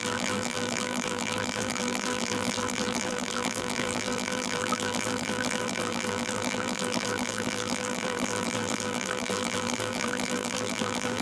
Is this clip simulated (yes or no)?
yes